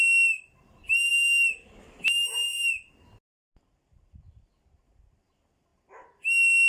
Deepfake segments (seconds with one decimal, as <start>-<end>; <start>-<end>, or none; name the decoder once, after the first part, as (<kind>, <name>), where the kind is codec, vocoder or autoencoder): none